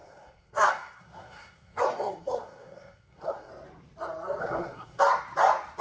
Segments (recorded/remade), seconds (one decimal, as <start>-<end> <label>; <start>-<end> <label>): 0.0-3.5 remade; 3.5-4.4 recorded; 4.4-5.0 remade; 5.0-5.8 recorded